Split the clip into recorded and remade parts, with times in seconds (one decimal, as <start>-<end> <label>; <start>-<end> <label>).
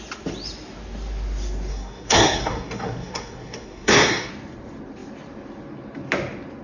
0.0-1.7 recorded; 1.7-4.3 remade; 4.3-6.6 recorded